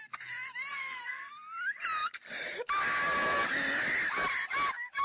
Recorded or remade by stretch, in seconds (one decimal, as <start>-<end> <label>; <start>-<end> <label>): 0.0-0.7 recorded; 0.7-1.3 remade; 1.3-5.0 recorded